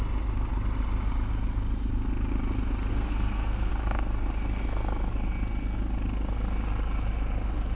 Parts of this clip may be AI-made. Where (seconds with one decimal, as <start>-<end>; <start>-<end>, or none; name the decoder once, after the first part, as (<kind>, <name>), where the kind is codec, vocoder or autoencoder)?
2.9-3.7 (codec, SNAC)